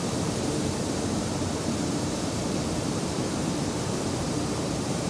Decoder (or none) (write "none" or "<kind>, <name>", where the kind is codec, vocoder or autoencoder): vocoder, BigVGAN v2